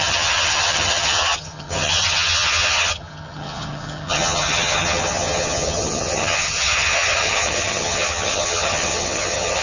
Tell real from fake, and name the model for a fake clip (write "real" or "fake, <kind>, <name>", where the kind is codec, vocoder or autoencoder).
fake, vocoder, HiFi-GAN